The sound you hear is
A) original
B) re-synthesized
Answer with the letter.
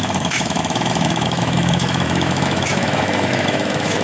B